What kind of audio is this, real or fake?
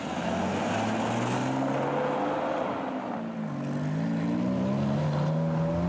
real